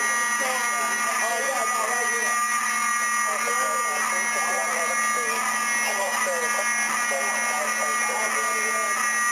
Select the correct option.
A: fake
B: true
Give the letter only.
B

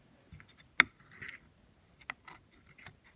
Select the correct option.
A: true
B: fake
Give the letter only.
A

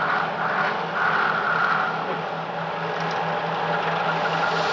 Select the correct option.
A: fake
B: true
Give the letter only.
B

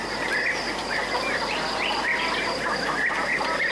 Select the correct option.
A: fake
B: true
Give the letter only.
B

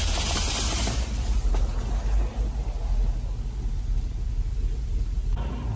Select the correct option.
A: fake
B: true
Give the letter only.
B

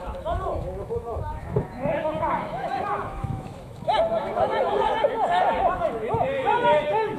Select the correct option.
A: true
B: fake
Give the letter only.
B